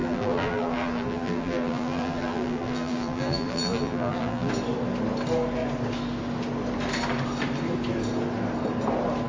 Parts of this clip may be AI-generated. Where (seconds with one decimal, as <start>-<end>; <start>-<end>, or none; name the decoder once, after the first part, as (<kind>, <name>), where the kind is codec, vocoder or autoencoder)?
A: 0.0-4.5 (vocoder, BigVGAN v2)